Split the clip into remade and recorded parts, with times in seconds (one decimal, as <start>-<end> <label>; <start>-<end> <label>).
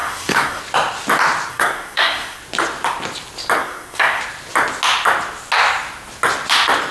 0.0-0.6 remade; 0.6-1.5 recorded; 1.5-2.4 remade; 2.4-3.6 recorded; 3.6-4.2 remade; 4.2-6.9 recorded